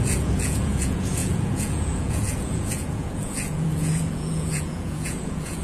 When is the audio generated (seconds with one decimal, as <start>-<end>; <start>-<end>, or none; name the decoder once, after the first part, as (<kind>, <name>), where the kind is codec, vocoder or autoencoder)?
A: 0.0-5.6 (vocoder, Vocos)